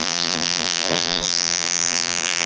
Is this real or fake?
fake